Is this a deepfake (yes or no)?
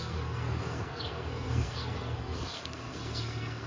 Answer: yes